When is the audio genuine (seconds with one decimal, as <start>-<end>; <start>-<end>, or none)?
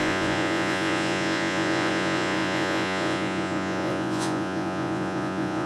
none